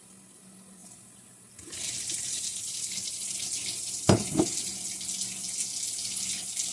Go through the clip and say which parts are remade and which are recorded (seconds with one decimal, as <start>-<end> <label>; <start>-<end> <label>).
0.0-0.8 recorded; 0.8-4.8 remade; 4.8-6.7 recorded